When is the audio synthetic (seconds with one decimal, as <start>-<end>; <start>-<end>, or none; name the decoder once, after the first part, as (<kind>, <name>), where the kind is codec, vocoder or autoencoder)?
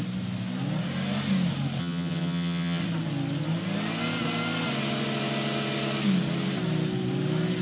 1.8-2.8 (vocoder, HiFi-GAN)